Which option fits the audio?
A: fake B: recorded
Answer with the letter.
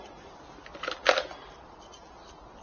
B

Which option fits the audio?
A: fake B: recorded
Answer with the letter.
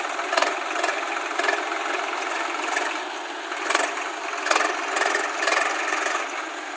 B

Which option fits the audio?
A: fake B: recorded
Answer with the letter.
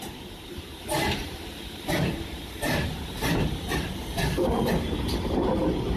A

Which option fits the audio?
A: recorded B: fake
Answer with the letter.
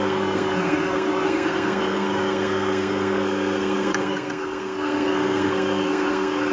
B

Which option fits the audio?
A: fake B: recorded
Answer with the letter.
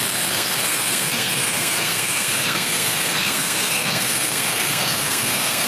A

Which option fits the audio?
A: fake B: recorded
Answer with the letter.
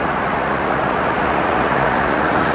A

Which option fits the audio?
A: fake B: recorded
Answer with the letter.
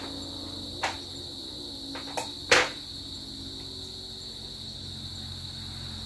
B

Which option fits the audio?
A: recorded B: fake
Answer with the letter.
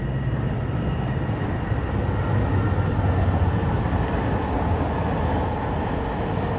A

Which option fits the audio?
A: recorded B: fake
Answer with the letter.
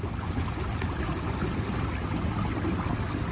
A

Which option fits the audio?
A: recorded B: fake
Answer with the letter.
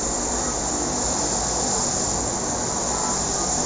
A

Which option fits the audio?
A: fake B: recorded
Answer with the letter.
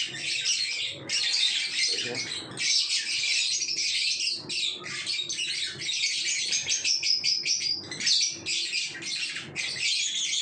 B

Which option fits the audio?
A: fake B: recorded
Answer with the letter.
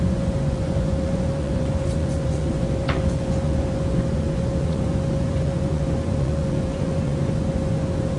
A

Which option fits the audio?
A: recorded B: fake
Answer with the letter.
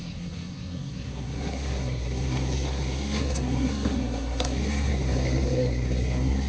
B